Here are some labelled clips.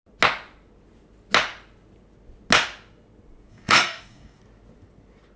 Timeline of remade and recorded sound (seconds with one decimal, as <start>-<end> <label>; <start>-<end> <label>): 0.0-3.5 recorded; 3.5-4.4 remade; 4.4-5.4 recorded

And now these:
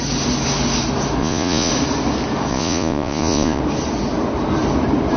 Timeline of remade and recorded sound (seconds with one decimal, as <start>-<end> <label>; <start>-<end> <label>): 0.0-1.2 recorded; 1.2-1.7 remade; 1.7-2.5 recorded; 2.5-3.6 remade; 3.6-5.2 recorded

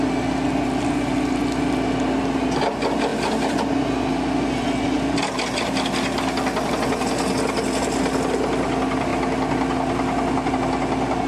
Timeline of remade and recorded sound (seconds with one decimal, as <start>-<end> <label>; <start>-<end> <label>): 0.0-11.3 recorded

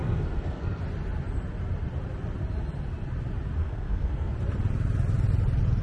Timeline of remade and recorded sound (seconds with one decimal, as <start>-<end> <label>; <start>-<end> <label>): 0.0-0.8 remade; 0.8-3.6 recorded; 3.6-4.3 remade; 4.3-5.8 recorded

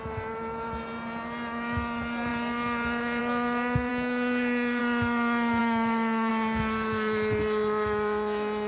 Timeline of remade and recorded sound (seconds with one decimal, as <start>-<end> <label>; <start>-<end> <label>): 0.0-3.9 recorded; 3.9-4.8 remade; 4.8-5.6 recorded; 5.6-6.3 remade; 6.3-8.7 recorded

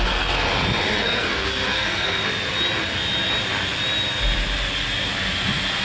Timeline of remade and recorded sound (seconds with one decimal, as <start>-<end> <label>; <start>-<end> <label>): 0.0-0.5 remade; 0.5-1.0 recorded; 1.0-2.2 remade; 2.2-5.8 recorded